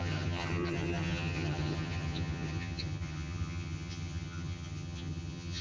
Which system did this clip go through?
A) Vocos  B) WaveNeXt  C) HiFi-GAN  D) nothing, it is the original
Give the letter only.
C